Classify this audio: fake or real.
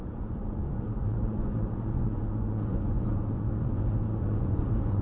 fake